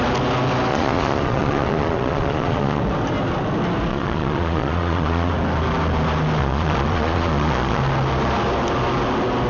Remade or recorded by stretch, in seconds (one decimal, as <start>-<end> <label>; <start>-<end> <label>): 0.0-0.7 recorded; 0.7-2.8 remade; 2.8-3.9 recorded; 3.9-5.3 remade; 5.3-6.4 recorded; 6.4-7.8 remade; 7.8-9.5 recorded